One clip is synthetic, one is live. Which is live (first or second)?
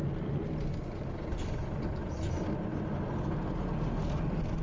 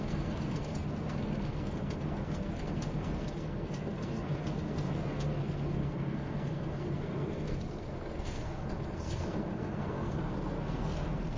first